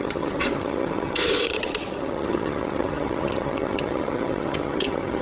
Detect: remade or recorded remade